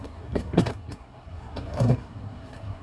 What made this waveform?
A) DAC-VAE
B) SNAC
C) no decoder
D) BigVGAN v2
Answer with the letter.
B